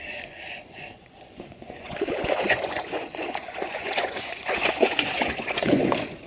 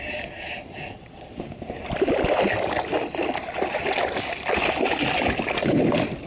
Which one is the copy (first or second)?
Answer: first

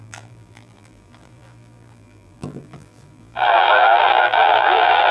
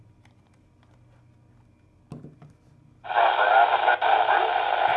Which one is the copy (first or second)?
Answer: first